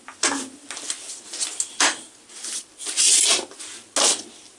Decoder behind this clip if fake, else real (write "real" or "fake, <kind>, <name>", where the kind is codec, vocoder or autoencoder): real